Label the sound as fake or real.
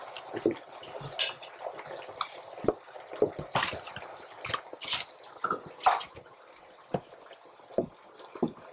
real